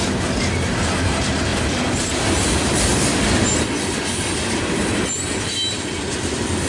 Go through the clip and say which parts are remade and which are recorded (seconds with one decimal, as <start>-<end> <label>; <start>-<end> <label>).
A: 0.0-6.7 recorded